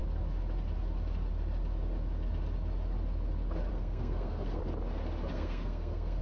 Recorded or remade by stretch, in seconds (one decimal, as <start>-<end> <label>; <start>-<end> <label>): 0.0-3.7 recorded; 3.7-4.6 remade; 4.6-5.3 recorded; 5.3-6.2 remade